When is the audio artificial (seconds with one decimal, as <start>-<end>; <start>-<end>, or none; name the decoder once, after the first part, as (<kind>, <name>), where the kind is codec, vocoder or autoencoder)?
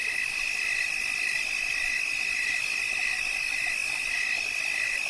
none